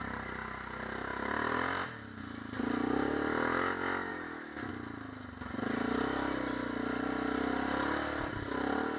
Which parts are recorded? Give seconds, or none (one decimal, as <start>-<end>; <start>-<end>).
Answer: 0.0-4.1; 4.7-9.0